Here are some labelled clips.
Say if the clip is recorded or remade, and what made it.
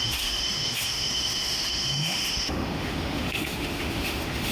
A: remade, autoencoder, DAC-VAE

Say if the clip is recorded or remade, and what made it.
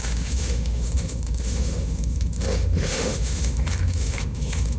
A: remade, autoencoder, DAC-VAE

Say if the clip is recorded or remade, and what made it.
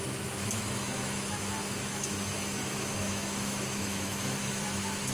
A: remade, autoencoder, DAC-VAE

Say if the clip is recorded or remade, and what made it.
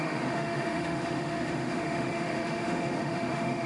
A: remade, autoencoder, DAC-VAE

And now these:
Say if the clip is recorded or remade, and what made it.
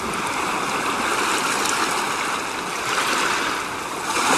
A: recorded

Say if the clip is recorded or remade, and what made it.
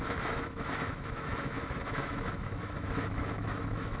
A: remade, autoencoder, DAC-VAE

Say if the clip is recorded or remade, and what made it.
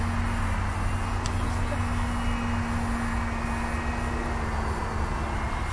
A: recorded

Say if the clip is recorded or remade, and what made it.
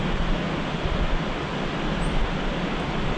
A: recorded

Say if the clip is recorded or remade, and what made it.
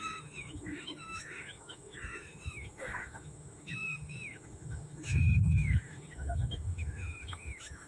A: remade, autoencoder, DAC-VAE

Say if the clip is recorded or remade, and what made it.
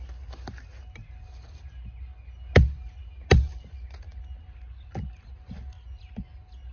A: recorded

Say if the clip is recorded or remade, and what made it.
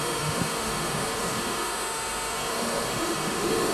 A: remade, autoencoder, DAC-VAE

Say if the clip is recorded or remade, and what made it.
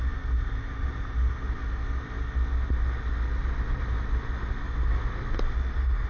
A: recorded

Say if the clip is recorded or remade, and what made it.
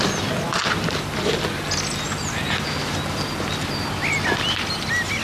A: recorded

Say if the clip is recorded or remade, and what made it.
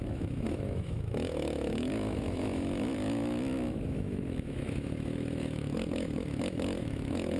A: remade, autoencoder, DAC-VAE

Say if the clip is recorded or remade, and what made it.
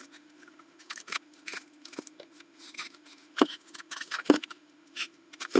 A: remade, autoencoder, DAC-VAE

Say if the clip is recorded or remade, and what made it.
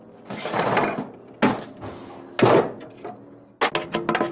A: recorded